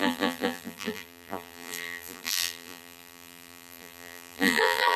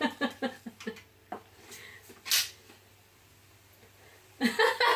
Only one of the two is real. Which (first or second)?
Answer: second